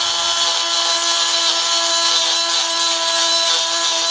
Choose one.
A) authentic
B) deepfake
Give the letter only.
A